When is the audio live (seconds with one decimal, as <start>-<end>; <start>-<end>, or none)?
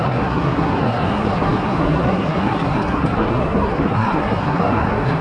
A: none